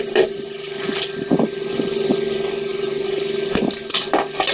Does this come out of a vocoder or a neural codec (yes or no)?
yes